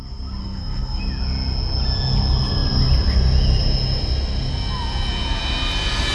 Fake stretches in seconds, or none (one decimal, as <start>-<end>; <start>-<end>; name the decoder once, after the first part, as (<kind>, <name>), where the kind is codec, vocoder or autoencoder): 0.4-1.0 (codec, SNAC)